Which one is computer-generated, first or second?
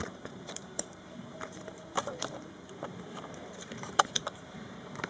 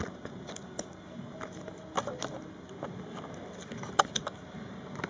first